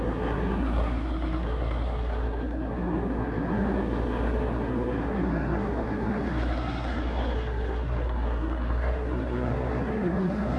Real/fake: fake